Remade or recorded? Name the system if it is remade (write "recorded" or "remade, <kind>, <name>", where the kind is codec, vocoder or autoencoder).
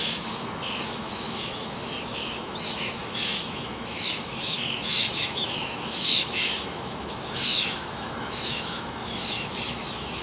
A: remade, autoencoder, DAC-VAE